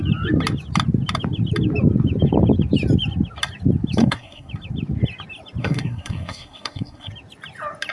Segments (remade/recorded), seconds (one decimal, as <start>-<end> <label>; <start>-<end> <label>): 0.0-4.0 recorded; 4.0-4.5 remade; 4.5-5.6 recorded; 5.6-7.1 remade; 7.1-7.9 recorded